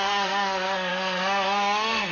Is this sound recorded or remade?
remade